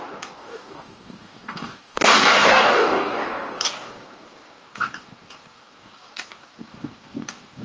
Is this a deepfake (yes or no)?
yes